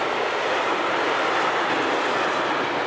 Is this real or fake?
real